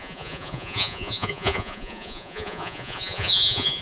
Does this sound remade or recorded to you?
remade